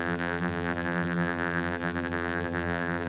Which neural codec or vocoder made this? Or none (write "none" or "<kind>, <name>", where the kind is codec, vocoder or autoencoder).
vocoder, BigVGAN v2